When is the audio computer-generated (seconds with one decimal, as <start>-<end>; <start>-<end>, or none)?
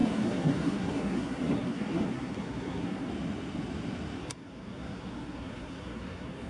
0.0-3.1; 4.2-6.5